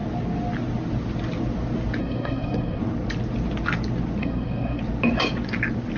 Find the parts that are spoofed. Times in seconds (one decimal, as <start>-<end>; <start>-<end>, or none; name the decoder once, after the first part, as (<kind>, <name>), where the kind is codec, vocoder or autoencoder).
2.0-2.8 (codec, SNAC); 4.2-4.8